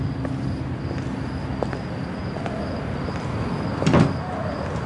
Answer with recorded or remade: recorded